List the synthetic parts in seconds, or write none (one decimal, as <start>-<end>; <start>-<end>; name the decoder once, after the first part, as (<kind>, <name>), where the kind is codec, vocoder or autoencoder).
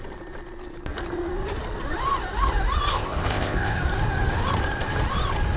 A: 2.9-3.8 (codec, ZipCodec)